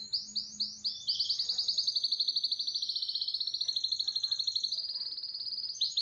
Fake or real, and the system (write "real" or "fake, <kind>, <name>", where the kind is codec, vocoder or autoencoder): real